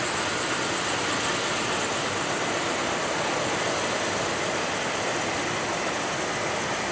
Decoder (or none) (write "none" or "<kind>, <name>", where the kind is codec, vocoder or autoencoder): none